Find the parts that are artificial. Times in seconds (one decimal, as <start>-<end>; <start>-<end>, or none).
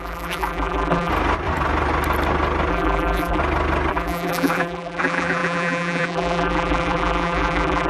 0.0-1.1; 2.7-3.4; 3.9-7.9